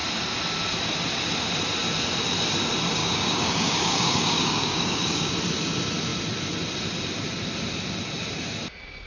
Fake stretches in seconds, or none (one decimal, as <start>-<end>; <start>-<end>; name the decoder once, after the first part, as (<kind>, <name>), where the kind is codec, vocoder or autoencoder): 3.0-5.3 (codec, DAC)